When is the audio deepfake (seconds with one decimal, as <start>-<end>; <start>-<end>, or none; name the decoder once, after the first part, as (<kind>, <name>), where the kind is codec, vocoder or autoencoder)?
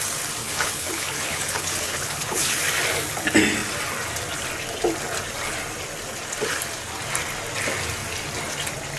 0.4-2.6 (codec, HILCodec)